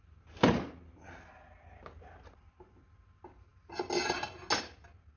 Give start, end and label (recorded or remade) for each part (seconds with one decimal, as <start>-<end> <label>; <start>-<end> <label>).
0.0-5.2 recorded